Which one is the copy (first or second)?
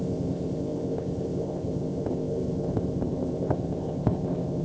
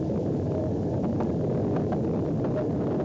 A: first